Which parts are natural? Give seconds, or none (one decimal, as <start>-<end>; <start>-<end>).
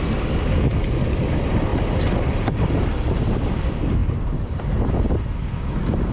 0.0-1.7; 3.2-6.1